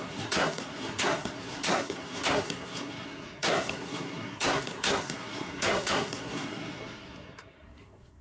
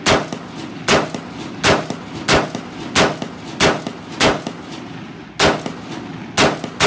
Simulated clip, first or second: first